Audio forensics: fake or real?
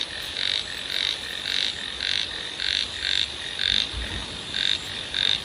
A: real